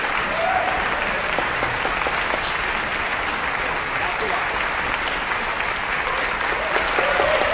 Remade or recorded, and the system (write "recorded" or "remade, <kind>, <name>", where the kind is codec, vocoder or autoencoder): recorded